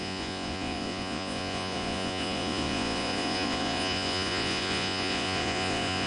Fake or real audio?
fake